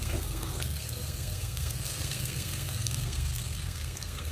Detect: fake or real fake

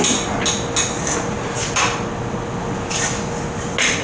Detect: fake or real real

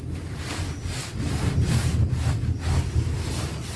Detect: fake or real real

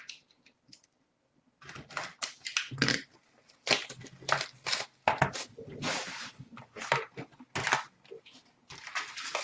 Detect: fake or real real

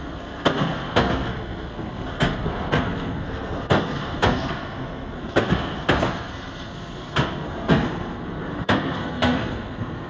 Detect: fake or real fake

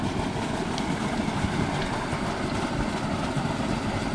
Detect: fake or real real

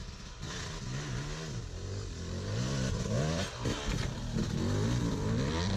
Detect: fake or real real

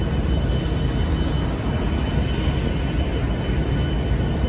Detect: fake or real real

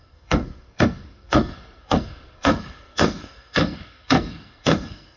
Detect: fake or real fake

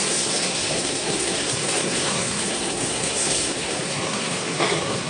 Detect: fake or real fake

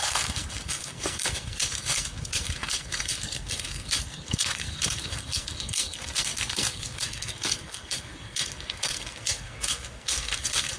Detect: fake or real fake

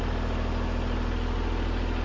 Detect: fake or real real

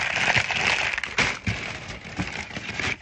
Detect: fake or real real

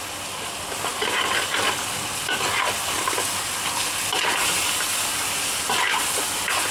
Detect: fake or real real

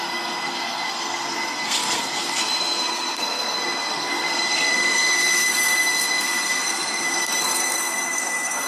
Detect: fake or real fake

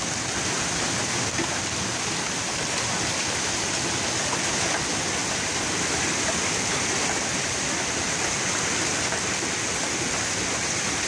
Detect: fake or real real